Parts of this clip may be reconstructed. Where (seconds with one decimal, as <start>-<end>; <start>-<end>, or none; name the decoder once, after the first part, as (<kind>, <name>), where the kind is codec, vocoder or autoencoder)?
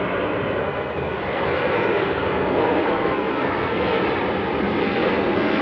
0.6-4.0 (codec, SNAC); 4.8-5.6